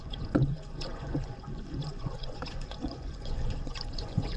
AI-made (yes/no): yes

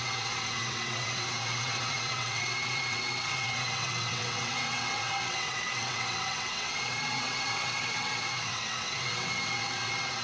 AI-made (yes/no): yes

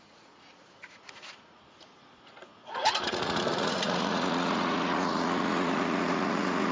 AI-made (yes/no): yes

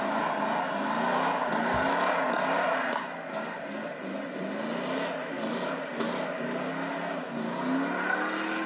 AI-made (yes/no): no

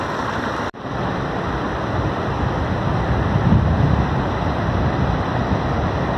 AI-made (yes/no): no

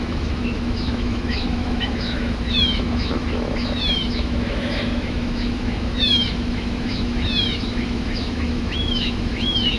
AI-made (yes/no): yes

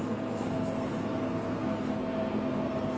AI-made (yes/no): yes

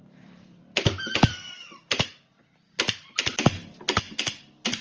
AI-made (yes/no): yes